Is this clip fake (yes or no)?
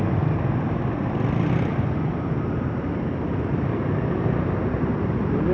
no